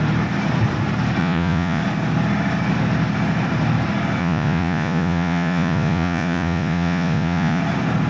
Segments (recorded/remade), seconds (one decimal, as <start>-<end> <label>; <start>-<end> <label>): 0.0-1.2 recorded; 1.2-1.8 remade; 1.8-4.2 recorded; 4.2-7.6 remade; 7.6-8.1 recorded